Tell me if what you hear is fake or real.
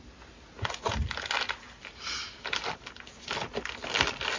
real